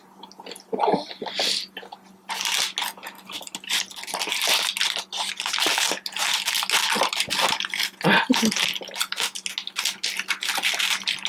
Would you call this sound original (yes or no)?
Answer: yes